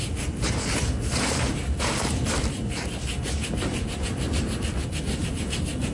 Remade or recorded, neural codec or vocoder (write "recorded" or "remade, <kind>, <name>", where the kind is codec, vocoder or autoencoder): recorded